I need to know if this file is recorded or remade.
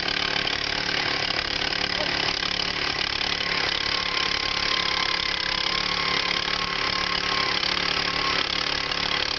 recorded